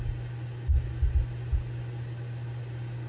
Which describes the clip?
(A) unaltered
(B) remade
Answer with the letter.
A